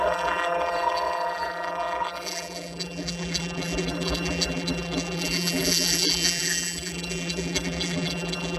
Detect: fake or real fake